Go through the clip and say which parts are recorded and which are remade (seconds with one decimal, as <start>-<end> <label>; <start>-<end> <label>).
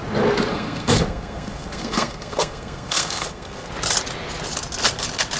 0.0-0.5 recorded; 0.5-3.7 remade; 3.7-5.4 recorded